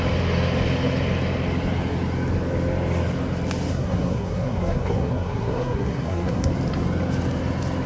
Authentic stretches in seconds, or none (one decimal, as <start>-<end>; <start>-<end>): 0.0-3.7; 6.5-7.9